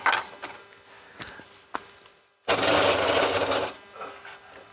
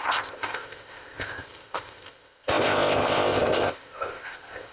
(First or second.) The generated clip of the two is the second